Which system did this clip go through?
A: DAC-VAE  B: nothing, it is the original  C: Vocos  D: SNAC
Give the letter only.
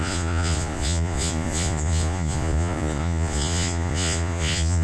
C